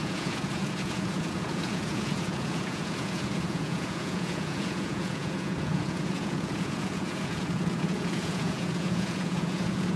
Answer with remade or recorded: remade